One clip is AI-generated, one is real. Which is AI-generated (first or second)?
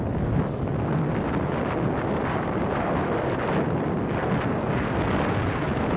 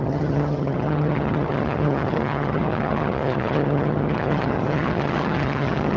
second